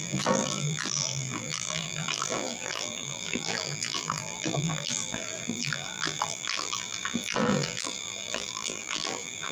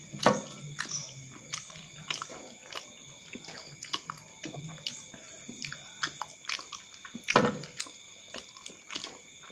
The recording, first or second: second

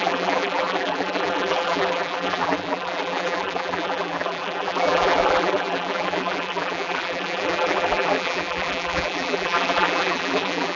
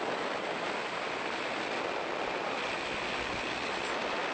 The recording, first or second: second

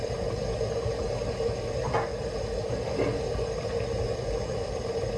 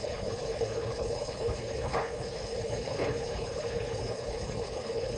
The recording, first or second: first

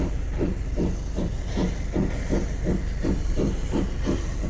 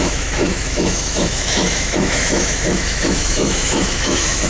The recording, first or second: first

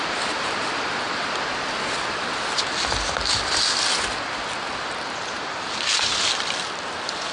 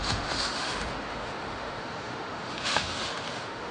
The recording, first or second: first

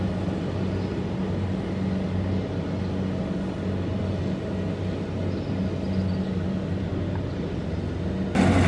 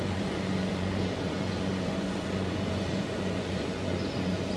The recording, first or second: first